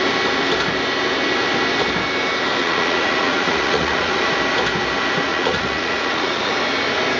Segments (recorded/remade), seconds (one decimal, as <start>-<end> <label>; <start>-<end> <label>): 0.0-2.6 recorded; 2.6-4.3 remade; 4.3-5.3 recorded; 5.3-6.5 remade; 6.5-7.2 recorded